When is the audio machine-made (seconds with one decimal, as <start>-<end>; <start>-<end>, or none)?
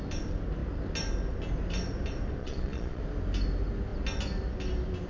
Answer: 2.4-3.0